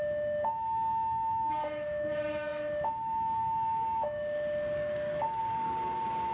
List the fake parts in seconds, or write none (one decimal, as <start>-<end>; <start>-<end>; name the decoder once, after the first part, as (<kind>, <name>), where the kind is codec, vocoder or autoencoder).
0.0-6.3 (codec, DAC)